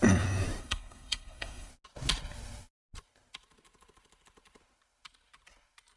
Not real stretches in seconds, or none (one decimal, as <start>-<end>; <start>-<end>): 0.6-1.7